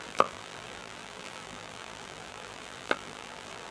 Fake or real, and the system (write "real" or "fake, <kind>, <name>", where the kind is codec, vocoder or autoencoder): fake, vocoder, BigVGAN v2